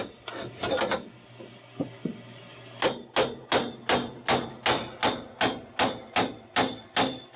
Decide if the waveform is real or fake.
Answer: real